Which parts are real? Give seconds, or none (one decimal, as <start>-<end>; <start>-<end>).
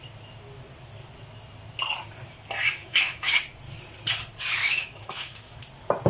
0.0-2.8; 3.4-4.6; 5.6-6.1